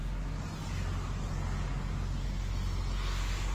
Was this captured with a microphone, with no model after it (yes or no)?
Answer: yes